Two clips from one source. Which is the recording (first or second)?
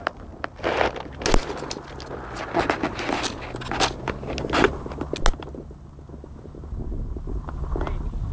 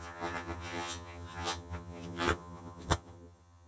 first